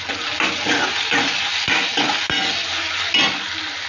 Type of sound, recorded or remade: recorded